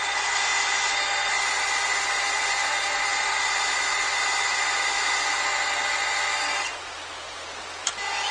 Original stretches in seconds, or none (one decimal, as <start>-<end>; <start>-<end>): 0.0-8.3